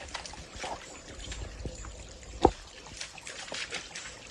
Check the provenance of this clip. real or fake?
real